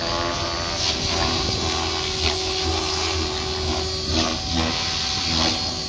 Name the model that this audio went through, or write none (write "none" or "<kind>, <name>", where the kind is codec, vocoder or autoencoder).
none